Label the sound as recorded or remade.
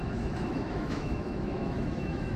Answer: remade